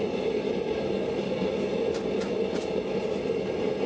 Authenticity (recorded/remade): recorded